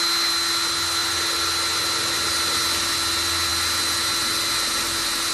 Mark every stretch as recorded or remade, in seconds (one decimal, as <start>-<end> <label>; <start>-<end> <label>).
0.0-5.3 recorded